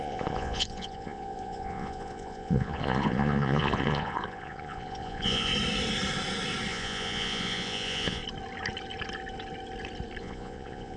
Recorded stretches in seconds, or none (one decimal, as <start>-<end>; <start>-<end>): 5.5-6.7; 8.2-10.2

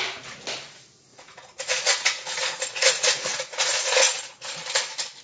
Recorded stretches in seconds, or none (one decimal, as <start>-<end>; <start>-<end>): 0.0-1.1; 4.2-5.2

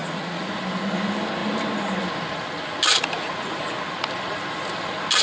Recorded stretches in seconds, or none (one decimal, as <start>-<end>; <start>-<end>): 0.6-3.0; 3.6-5.2

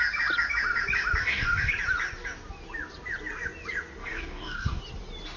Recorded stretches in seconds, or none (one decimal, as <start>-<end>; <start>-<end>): 0.0-1.2; 1.7-4.0; 4.8-5.4

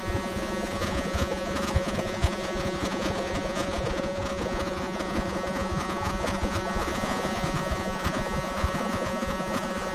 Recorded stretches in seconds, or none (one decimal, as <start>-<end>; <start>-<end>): none